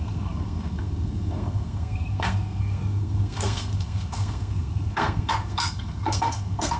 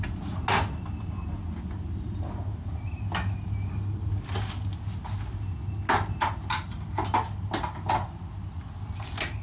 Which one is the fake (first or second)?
first